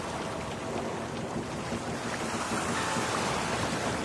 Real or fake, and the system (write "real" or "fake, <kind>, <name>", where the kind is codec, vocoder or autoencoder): real